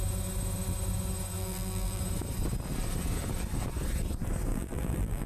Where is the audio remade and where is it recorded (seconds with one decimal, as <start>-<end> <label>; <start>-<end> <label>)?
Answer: 0.0-1.4 recorded; 1.4-2.0 remade; 2.0-4.5 recorded; 4.5-5.3 remade